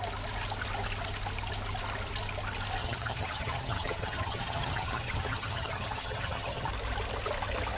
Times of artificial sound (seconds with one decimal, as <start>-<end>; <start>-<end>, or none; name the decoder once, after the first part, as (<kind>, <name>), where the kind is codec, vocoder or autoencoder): 2.8-6.7 (vocoder, HiFi-GAN)